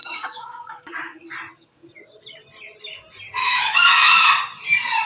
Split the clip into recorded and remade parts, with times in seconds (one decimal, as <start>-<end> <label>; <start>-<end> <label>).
0.0-0.9 remade; 0.9-3.4 recorded; 3.4-4.3 remade; 4.3-5.0 recorded